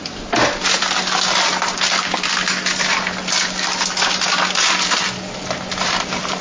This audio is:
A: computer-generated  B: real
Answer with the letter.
B